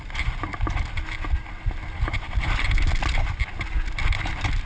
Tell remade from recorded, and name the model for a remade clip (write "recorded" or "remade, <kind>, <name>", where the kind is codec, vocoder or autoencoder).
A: recorded